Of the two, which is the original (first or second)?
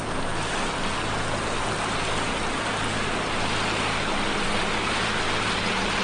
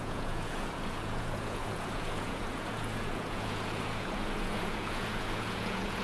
first